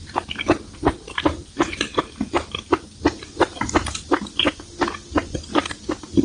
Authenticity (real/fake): real